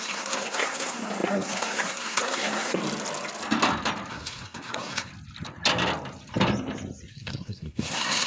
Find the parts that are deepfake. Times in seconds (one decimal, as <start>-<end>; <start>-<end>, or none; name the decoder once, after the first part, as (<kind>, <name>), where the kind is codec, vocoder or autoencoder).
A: 0.0-2.8 (codec, SNAC); 4.1-5.1; 7.1-8.3